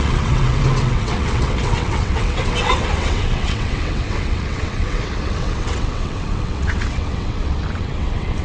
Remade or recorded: remade